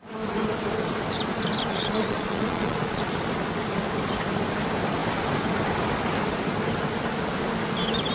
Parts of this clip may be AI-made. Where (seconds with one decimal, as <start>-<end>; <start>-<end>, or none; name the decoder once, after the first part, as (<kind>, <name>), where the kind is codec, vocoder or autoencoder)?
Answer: 1.7-3.0 (vocoder, Vocos)